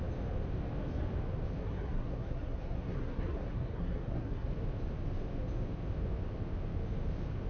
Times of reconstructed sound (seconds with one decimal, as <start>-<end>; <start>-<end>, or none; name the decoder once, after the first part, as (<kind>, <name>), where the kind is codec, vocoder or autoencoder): 1.6-4.5 (codec, SNAC)